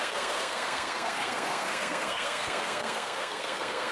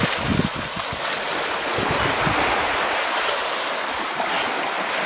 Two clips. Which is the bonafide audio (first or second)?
second